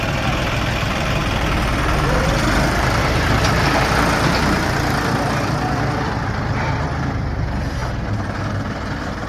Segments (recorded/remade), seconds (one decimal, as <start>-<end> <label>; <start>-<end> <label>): 0.0-7.8 remade; 7.8-8.5 recorded; 8.5-9.3 remade